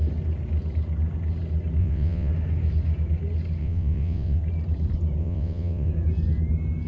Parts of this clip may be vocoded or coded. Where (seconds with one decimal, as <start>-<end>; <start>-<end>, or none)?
1.8-2.3; 3.6-4.4; 5.2-5.9